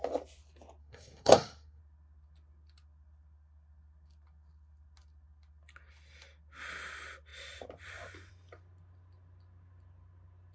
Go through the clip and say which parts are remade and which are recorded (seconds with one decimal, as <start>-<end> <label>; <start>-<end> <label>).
0.0-0.8 recorded; 0.8-1.8 remade; 1.8-10.5 recorded